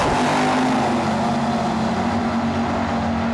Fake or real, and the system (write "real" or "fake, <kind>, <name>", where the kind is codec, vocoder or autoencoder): real